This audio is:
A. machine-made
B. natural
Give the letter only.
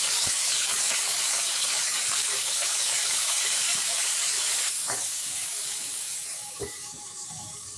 A